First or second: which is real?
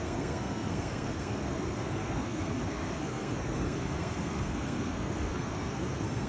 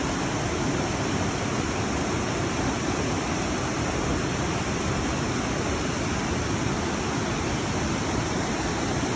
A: second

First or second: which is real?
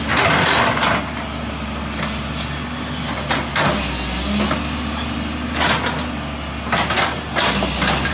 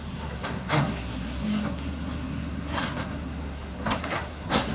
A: first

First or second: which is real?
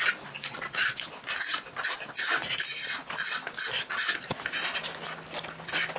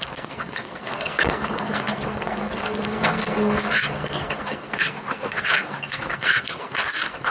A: first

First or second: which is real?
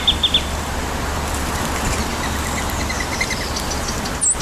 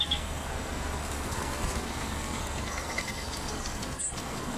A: first